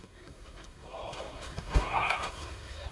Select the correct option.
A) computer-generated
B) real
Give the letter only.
A